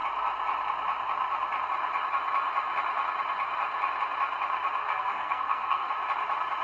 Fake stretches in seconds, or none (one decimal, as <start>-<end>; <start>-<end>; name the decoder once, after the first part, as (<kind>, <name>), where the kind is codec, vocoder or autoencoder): 4.8-5.9 (codec, SNAC)